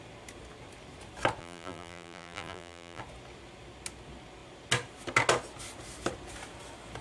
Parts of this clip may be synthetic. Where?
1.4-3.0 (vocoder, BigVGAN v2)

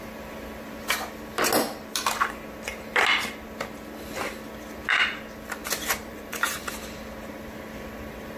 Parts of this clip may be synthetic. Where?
6.1-6.7 (vocoder, BigVGAN v2)

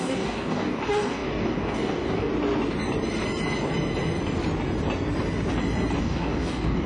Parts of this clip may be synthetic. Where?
0.0-2.3 (codec, DAC); 6.0-6.9

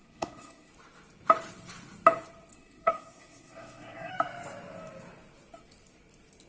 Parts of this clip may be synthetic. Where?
0.0-0.7 (codec, SNAC); 2.5-4.1